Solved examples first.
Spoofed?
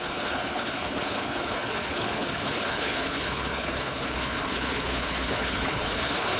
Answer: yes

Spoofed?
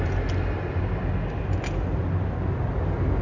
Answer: no